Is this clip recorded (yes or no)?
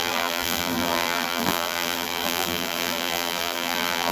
no